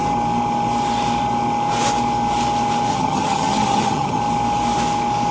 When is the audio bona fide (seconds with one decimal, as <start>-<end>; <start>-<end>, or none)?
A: 0.0-2.9; 4.2-5.3